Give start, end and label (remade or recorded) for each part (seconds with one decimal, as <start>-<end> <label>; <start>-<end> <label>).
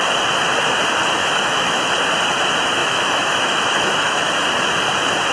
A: 0.0-1.2 recorded; 1.2-1.8 remade; 1.8-2.8 recorded; 2.8-4.3 remade; 4.3-5.3 recorded